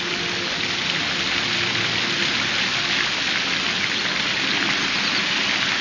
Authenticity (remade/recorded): recorded